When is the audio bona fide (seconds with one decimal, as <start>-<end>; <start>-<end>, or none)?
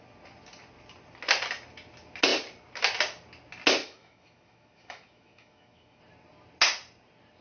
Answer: 0.0-3.8; 6.0-7.4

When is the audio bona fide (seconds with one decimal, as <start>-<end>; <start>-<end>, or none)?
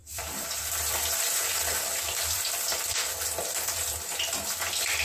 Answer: 1.5-1.9; 2.5-3.1; 3.9-5.0